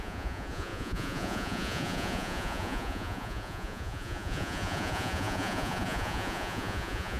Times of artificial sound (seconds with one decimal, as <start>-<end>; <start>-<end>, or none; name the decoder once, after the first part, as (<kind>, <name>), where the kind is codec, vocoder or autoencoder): 0.0-7.2 (vocoder, Vocos)